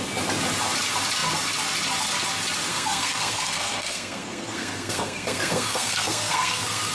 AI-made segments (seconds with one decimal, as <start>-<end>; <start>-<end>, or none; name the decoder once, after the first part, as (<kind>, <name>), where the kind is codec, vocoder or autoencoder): 2.7-6.9 (codec, SNAC)